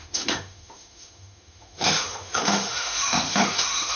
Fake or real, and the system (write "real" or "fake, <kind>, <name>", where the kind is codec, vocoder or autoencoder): fake, autoencoder, DAC-VAE